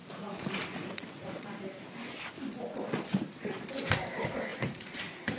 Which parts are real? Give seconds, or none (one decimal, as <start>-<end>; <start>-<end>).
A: 1.6-4.5